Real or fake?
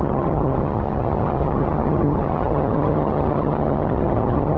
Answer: fake